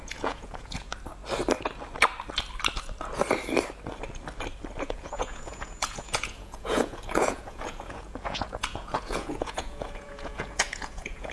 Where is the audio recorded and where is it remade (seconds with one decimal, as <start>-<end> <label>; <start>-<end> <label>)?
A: 0.0-0.9 remade; 0.9-4.8 recorded; 4.8-11.3 remade